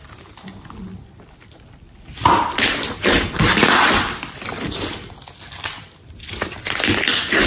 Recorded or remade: recorded